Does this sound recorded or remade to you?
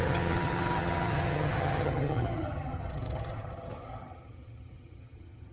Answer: remade